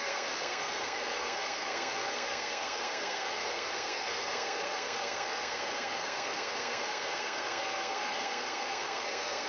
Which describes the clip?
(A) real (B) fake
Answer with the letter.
B